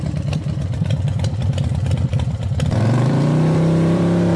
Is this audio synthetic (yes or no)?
yes